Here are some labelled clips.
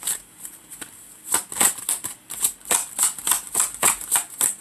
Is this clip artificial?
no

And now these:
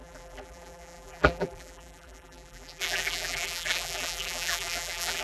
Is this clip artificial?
yes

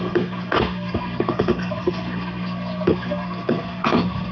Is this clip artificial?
yes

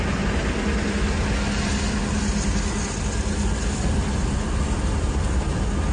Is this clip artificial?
no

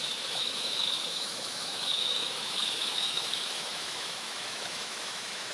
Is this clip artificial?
yes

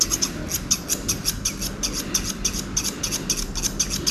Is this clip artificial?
no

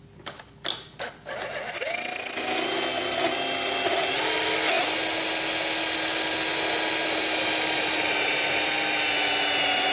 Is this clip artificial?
no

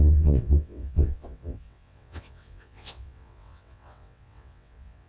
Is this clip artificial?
yes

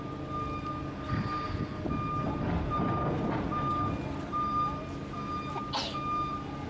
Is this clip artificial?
no